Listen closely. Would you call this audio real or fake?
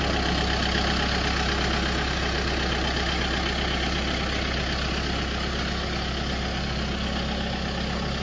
real